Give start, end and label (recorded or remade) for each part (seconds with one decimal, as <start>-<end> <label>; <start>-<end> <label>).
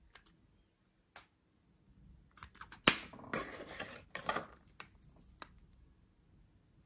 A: 0.0-3.5 recorded; 3.5-4.2 remade; 4.2-6.9 recorded